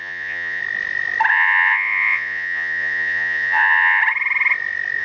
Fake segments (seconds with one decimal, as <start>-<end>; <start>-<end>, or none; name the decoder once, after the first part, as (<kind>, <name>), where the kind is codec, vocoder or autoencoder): 0.0-0.6 (vocoder, Vocos); 1.3-4.0